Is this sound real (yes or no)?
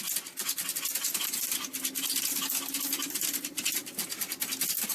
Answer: yes